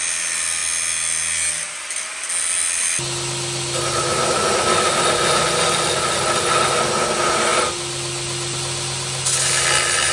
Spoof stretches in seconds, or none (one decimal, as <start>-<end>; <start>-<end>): none